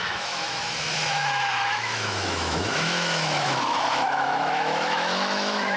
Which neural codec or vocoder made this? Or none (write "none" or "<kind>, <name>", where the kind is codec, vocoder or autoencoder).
autoencoder, DAC-VAE